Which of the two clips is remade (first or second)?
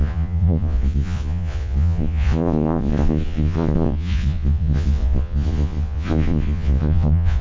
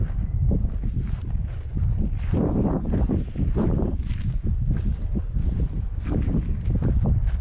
first